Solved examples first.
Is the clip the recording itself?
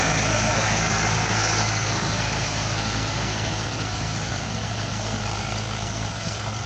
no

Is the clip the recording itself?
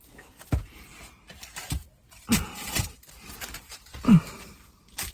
yes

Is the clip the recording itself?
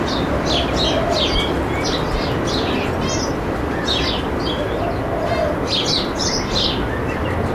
yes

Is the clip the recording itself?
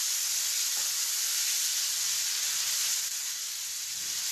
yes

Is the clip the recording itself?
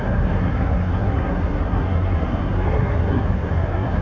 no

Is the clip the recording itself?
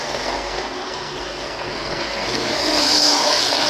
no